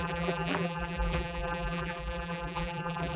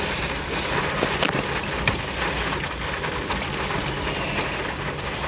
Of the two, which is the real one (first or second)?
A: second